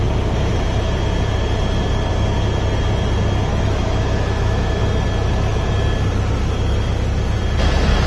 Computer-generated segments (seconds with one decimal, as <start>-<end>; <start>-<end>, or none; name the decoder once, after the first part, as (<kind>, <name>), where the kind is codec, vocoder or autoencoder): 3.5-4.8 (autoencoder, DAC-VAE)